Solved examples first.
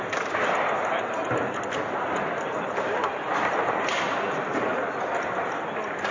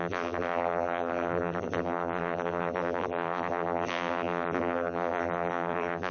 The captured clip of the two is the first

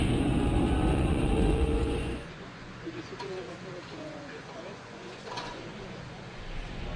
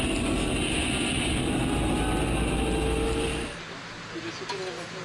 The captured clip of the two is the second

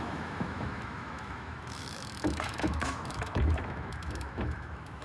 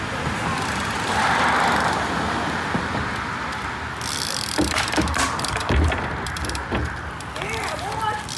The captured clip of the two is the second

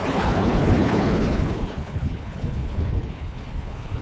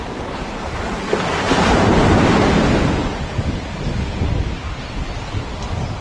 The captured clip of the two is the second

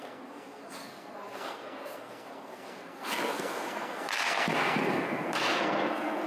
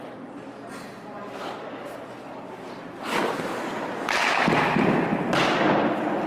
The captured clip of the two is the second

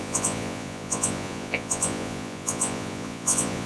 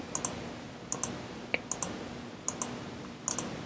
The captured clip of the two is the second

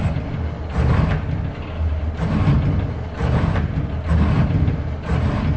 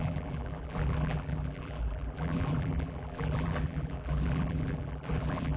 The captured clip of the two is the first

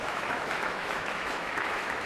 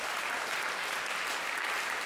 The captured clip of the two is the second